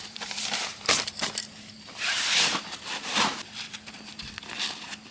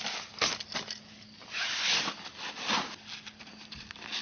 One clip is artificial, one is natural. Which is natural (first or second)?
second